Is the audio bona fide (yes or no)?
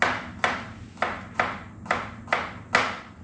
yes